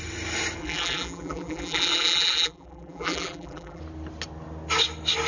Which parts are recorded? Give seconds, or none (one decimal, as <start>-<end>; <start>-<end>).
0.0-0.6; 3.8-5.3

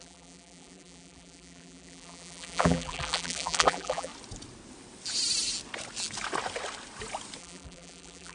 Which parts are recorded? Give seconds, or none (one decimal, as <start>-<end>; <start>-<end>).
4.1-7.4

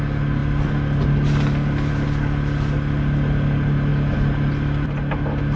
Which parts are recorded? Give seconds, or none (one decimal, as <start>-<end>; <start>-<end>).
0.0-5.6